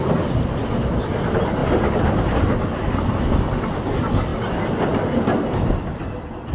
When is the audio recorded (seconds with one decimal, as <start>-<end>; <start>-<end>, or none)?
0.0-6.5